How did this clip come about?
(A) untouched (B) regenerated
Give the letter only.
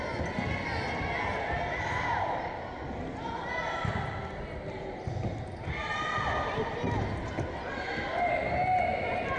A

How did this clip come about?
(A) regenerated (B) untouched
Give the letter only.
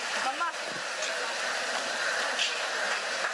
B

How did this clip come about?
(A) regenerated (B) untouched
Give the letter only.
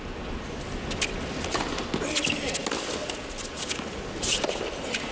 B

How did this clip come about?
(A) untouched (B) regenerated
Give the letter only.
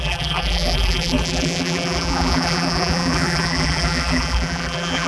B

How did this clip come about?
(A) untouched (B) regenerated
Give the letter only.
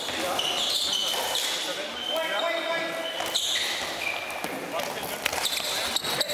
A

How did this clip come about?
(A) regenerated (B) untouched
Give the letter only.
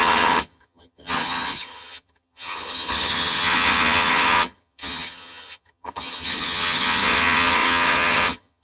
A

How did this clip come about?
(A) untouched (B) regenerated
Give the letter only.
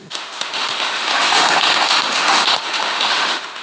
B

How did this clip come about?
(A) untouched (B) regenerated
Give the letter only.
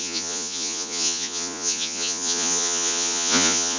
B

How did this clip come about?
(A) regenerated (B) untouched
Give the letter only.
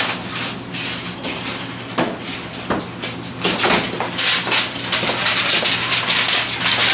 B